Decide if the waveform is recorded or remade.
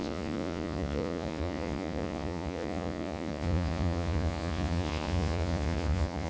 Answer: remade